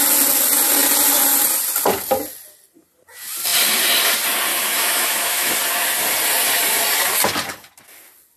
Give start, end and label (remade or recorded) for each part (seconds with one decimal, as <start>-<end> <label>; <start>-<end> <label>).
0.0-4.5 recorded; 4.5-5.5 remade; 5.5-8.4 recorded